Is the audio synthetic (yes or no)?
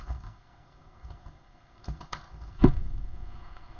yes